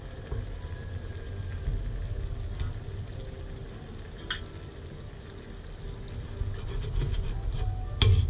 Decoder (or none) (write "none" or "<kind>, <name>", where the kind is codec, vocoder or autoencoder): none